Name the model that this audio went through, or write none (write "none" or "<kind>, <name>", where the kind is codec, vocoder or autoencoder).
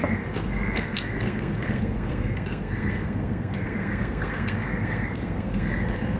codec, SNAC